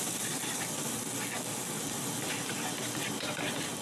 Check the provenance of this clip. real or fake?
real